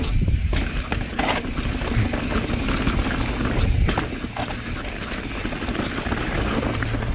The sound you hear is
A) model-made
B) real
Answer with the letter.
B